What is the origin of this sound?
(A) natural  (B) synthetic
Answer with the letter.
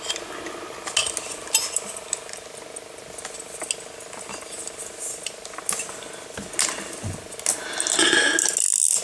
A